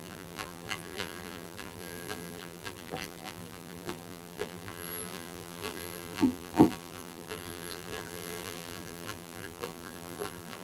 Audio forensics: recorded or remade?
remade